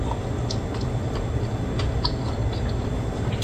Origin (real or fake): fake